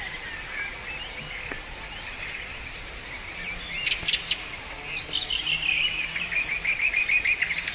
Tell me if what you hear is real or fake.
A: real